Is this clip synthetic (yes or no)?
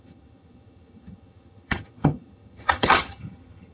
yes